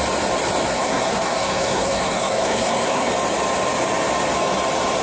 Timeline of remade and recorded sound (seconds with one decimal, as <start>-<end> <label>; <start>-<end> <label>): 0.0-0.7 recorded; 0.7-3.1 remade; 3.1-5.0 recorded